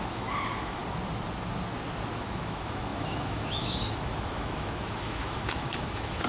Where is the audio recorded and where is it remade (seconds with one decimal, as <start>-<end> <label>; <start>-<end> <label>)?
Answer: 0.0-0.8 remade; 0.8-2.2 recorded; 2.2-6.3 remade